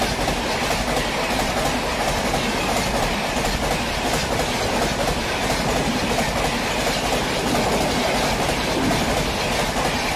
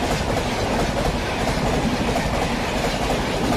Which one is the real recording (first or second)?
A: first